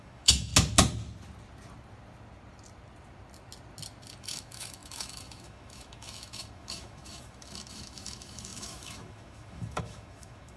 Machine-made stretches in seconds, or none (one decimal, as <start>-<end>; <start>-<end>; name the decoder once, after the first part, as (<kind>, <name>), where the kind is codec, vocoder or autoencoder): 0.0-0.5 (autoencoder, DAC-VAE); 4.2-10.6